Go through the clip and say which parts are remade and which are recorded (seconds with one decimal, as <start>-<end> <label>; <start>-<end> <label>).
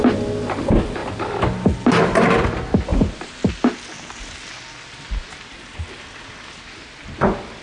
0.0-7.6 recorded